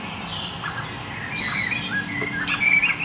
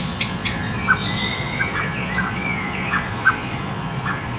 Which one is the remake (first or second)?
second